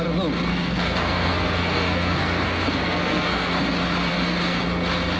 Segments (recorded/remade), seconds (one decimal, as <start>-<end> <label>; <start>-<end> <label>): 0.0-0.5 recorded; 0.5-3.6 remade; 3.6-4.1 recorded; 4.1-4.6 remade; 4.6-5.2 recorded